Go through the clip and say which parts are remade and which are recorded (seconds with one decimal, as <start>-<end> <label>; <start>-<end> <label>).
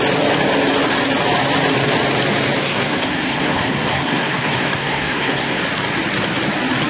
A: 0.0-2.6 recorded; 2.6-5.6 remade; 5.6-6.9 recorded